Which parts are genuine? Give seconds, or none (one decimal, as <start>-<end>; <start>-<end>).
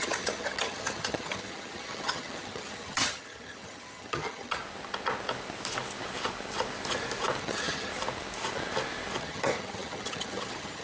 4.6-7.4; 7.9-9.2